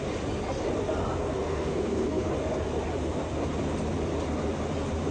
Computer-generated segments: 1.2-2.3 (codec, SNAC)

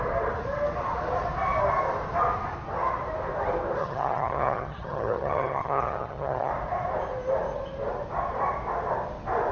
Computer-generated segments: 3.8-6.5 (vocoder, HiFi-GAN)

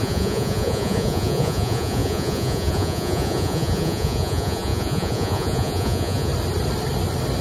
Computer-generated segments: 0.0-6.3 (vocoder, Vocos)

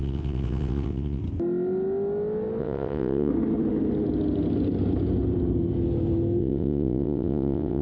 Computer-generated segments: 0.0-1.2 (vocoder, WaveNeXt); 2.6-3.3; 6.4-7.8

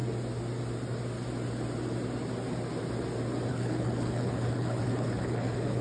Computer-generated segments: 3.5-5.8 (codec, HILCodec)

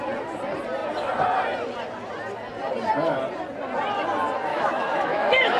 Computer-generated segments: 4.5-5.6 (autoencoder, DAC-VAE)

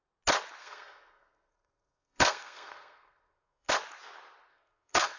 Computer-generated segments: 0.6-3.7 (codec, SNAC); 4.5-5.2

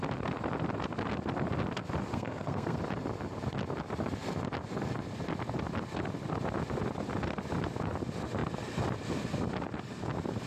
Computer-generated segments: 2.1-2.8 (codec, SNAC)